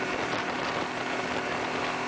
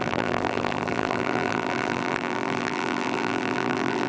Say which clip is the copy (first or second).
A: second